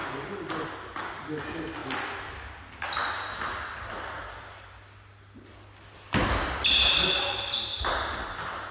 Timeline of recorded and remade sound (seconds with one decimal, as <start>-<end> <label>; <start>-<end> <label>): 0.0-8.7 recorded